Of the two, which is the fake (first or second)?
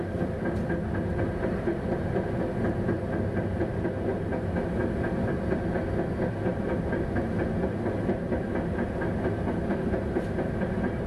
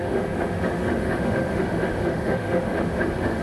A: second